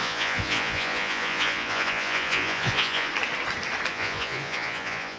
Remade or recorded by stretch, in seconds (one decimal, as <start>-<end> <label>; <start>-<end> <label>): 0.0-3.1 remade; 3.1-3.9 recorded; 3.9-5.2 remade

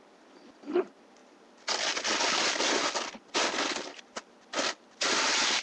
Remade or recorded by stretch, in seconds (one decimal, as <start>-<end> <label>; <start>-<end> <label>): 0.0-5.6 recorded

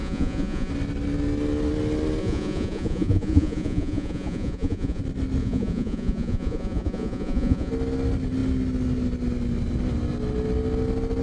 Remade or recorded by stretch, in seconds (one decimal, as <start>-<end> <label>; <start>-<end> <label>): 0.0-0.7 remade; 0.7-2.2 recorded; 2.2-5.0 remade; 5.0-5.4 recorded; 5.4-7.7 remade; 7.7-11.2 recorded

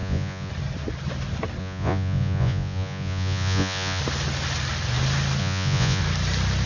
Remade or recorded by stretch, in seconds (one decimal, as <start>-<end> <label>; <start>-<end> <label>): 0.0-0.5 remade; 0.5-1.6 recorded; 1.6-4.0 remade; 4.0-5.4 recorded; 5.4-6.0 remade; 6.0-6.7 recorded

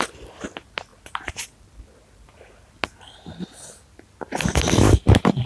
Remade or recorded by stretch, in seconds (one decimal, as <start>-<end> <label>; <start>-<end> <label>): 0.0-5.5 recorded